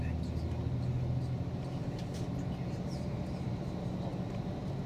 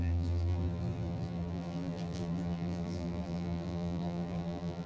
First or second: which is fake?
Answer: second